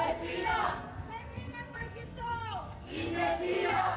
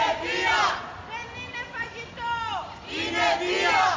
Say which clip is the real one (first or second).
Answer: second